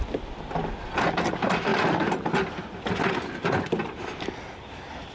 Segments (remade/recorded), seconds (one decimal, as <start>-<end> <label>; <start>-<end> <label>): 0.0-5.1 recorded